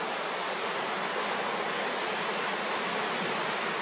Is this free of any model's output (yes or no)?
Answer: yes